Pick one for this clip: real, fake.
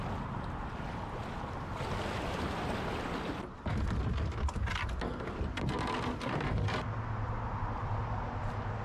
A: real